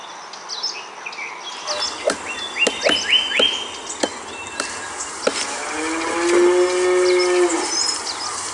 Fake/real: real